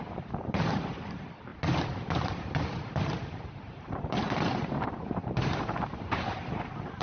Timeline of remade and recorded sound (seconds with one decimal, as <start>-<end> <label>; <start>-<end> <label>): 0.0-1.5 remade; 1.5-2.0 recorded; 2.0-7.0 remade